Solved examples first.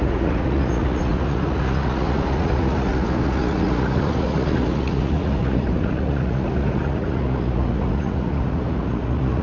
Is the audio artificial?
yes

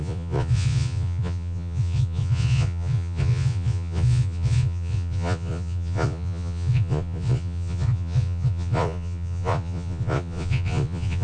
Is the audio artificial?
yes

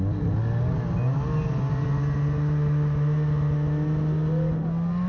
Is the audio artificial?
no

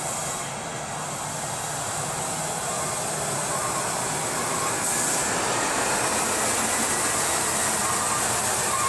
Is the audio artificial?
no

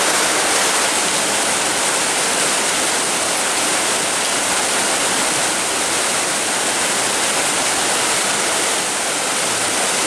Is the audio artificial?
no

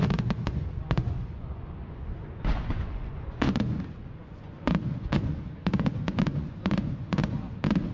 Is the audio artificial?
yes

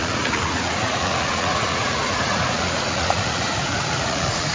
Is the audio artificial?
yes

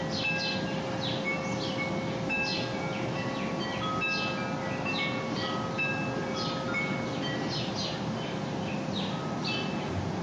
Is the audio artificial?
no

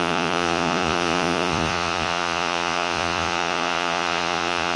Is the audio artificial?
yes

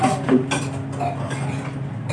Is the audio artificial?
no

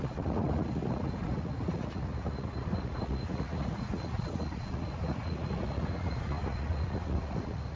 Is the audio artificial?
yes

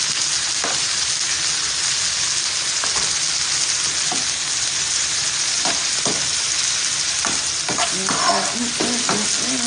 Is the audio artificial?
no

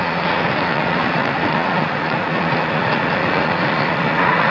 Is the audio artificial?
yes